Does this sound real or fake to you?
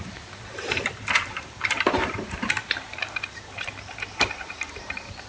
fake